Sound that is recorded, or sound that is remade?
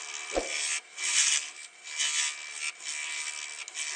recorded